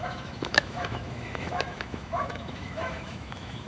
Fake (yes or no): yes